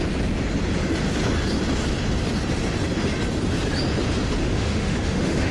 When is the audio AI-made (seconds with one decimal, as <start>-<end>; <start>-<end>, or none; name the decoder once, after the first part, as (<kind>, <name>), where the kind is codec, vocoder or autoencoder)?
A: 4.4-5.5 (autoencoder, DAC-VAE)